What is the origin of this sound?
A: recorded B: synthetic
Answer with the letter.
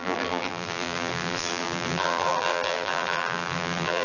B